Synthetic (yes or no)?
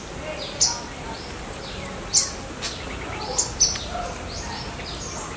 no